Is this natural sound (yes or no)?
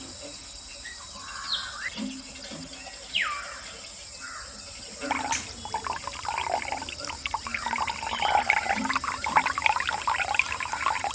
yes